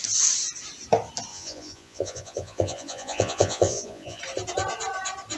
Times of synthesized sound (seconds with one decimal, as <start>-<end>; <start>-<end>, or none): 1.3-4.2